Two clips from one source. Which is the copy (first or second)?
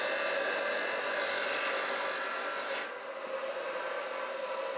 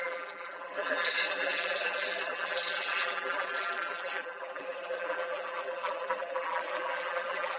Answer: second